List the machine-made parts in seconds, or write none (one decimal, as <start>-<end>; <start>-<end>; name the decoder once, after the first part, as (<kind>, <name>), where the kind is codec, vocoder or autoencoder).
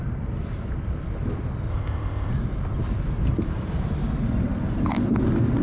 1.7-2.3 (codec, ZipCodec)